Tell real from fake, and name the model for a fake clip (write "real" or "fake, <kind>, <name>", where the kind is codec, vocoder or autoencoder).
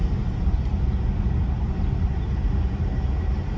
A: real